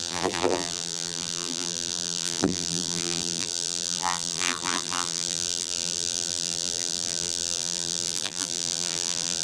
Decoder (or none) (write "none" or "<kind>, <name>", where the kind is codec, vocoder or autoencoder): vocoder, BigVGAN v2